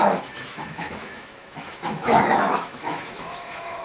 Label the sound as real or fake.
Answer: fake